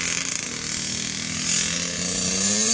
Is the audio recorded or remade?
recorded